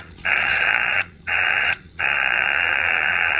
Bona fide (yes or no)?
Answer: no